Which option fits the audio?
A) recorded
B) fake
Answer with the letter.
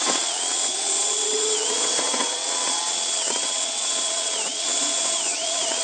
B